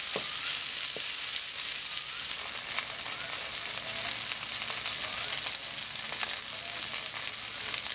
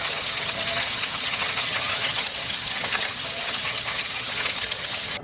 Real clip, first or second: first